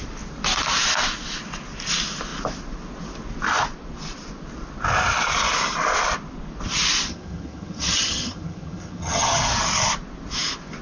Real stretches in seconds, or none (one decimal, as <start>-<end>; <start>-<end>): 0.0-7.1; 9.4-10.8